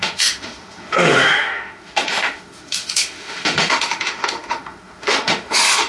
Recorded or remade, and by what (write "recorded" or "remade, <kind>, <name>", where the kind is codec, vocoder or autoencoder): remade, autoencoder, DAC-VAE